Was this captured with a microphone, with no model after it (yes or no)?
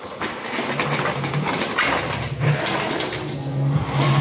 yes